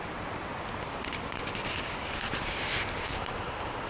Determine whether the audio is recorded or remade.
recorded